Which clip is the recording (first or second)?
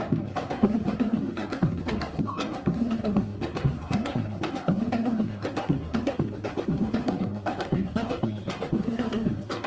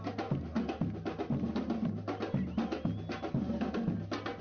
second